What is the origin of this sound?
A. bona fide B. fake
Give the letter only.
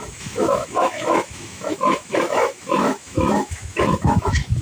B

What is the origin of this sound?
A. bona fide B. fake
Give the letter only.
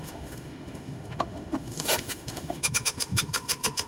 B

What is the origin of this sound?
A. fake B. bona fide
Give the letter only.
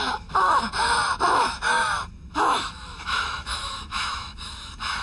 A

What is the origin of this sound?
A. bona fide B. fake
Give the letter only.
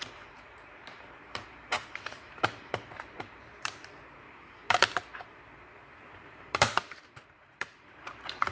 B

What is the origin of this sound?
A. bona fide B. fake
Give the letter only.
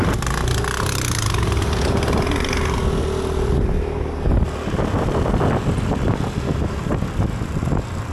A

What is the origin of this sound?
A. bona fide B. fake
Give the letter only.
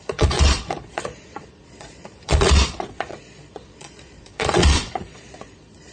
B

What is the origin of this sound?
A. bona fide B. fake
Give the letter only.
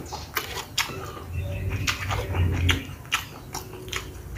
A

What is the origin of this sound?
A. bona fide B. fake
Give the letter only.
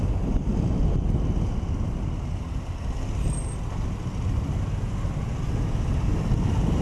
A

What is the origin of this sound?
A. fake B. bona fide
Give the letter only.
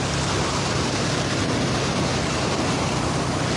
B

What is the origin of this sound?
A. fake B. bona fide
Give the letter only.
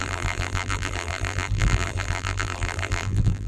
A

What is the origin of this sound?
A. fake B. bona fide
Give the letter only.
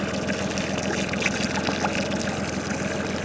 B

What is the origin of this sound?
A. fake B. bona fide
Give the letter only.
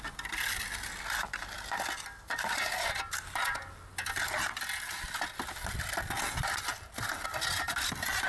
B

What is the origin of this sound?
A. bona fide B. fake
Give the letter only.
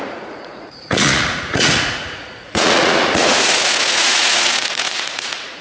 B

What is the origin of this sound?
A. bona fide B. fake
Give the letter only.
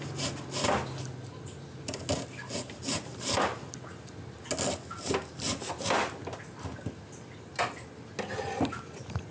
A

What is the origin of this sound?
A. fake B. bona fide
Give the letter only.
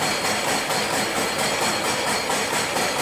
B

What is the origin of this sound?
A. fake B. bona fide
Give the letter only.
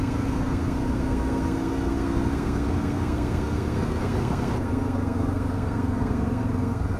A